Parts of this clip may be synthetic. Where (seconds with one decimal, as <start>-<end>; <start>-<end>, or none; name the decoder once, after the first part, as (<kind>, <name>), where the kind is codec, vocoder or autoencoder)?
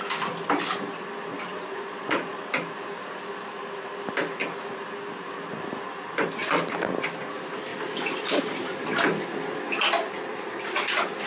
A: 1.3-2.4 (vocoder, Vocos)